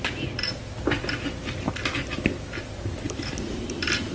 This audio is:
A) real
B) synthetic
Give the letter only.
A